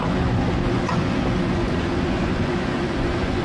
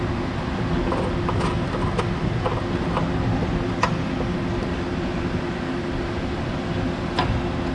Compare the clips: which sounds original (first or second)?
second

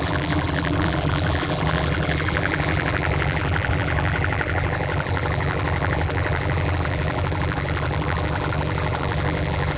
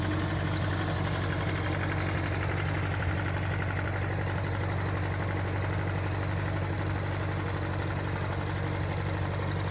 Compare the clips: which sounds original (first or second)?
second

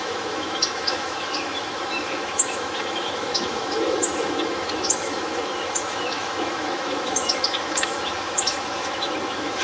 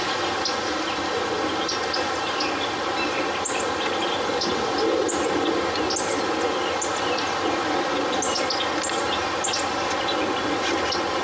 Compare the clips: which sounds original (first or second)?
second